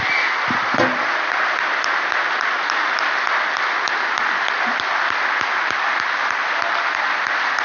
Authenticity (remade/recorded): recorded